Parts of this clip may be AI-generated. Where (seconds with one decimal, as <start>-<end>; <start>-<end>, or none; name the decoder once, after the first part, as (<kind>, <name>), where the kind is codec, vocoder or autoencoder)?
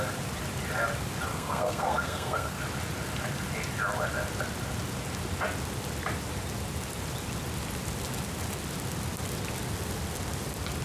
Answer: 1.3-2.6 (codec, SNAC)